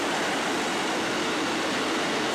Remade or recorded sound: remade